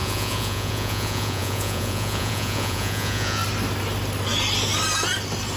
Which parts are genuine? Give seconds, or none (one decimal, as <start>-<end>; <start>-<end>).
3.4-5.6